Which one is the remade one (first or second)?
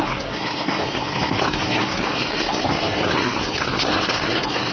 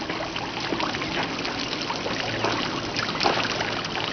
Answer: first